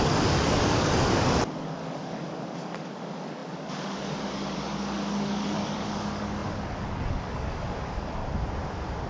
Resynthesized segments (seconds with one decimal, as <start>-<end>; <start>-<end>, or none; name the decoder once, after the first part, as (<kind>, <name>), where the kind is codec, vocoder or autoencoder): 0.0-8.2 (codec, DAC)